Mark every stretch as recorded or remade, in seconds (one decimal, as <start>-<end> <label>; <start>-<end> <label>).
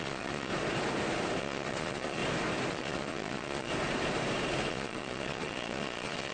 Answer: 0.0-0.5 remade; 0.5-1.4 recorded; 1.4-2.2 remade; 2.2-2.7 recorded; 2.7-3.7 remade; 3.7-4.7 recorded; 4.7-6.3 remade